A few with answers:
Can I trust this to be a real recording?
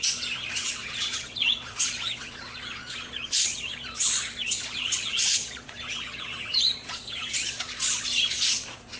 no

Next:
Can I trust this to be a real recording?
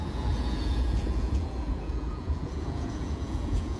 no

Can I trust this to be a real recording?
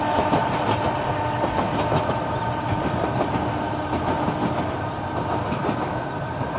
yes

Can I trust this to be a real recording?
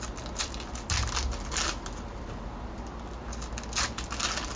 yes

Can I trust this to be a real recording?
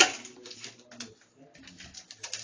yes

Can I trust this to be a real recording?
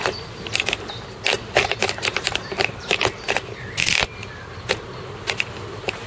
yes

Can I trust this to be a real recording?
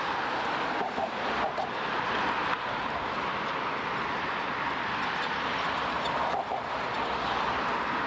yes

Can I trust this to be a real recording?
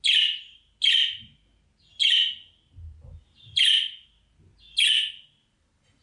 yes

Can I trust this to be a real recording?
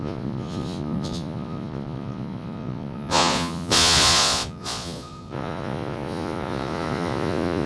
no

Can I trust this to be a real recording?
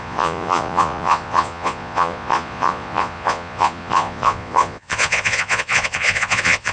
no